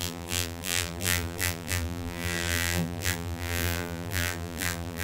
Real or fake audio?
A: fake